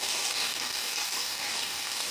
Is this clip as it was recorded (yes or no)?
no